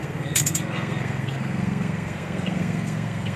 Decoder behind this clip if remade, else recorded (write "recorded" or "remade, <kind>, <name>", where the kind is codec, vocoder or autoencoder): remade, codec, SNAC